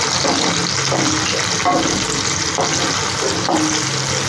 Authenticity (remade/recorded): recorded